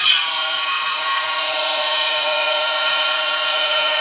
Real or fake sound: fake